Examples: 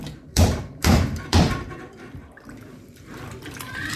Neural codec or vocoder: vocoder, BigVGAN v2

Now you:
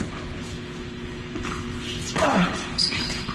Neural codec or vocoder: codec, HILCodec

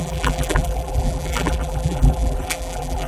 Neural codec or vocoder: vocoder, BigVGAN v2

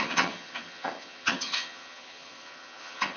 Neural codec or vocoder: vocoder, HiFi-GAN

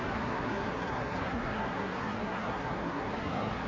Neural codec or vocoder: codec, SNAC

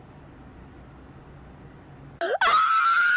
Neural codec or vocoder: none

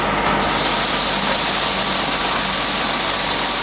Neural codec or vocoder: none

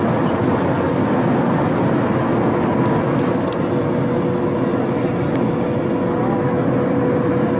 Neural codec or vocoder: none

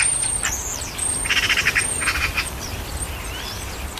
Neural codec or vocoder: none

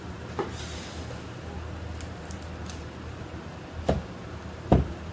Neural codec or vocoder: none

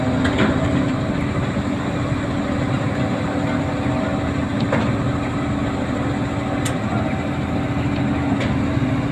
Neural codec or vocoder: none